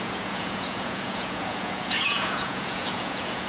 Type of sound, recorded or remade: remade